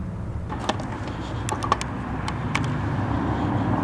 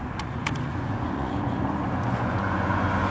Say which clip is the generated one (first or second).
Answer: second